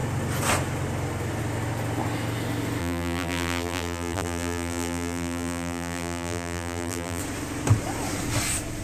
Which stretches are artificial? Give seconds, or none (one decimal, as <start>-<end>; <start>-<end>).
2.8-7.2